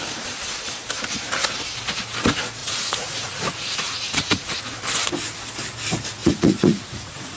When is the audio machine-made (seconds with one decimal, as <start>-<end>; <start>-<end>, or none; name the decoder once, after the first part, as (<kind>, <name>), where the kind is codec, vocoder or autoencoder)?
2.6-4.6 (vocoder, Vocos); 6.2-7.4